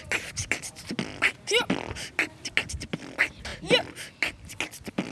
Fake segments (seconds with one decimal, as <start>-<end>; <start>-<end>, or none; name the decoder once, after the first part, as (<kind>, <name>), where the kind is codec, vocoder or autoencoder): none